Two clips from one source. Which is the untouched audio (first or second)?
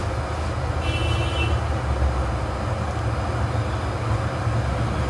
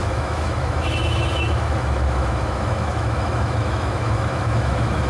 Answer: first